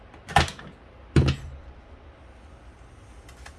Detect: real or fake real